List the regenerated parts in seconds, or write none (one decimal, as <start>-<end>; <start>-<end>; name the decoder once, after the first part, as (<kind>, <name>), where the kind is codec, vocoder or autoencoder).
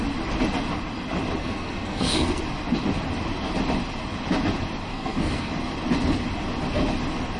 1.4-2.4 (codec, SNAC); 4.9-5.5